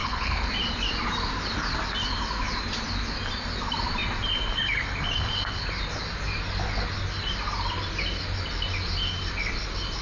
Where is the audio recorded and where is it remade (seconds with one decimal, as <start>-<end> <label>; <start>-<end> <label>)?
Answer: 0.0-0.5 remade; 0.5-10.0 recorded